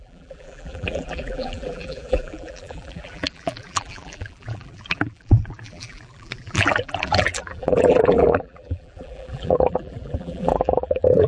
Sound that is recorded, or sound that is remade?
remade